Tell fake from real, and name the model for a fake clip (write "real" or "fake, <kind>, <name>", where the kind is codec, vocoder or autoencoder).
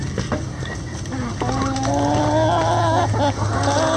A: real